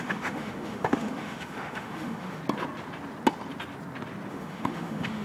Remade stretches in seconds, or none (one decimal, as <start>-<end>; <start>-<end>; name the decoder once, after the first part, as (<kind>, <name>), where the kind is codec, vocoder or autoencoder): 0.0-2.4 (autoencoder, DAC-VAE); 4.3-5.2